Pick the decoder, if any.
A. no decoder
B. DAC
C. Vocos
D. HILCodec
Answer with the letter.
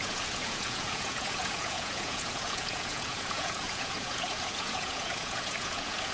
C